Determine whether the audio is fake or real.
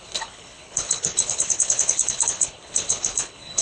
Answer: fake